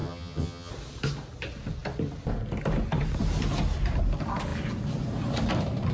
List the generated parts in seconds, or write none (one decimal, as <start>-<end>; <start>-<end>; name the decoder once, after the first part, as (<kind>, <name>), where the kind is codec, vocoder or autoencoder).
0.0-0.7 (vocoder, HiFi-GAN)